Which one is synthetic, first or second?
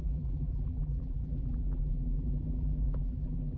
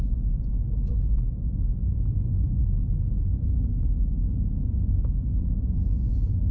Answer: first